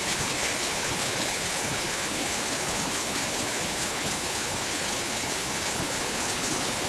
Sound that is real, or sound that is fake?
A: fake